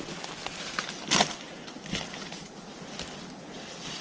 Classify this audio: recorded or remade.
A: recorded